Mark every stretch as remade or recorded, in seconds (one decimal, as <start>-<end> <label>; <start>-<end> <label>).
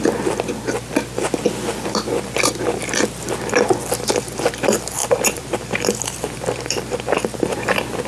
0.0-5.0 recorded; 5.0-8.1 remade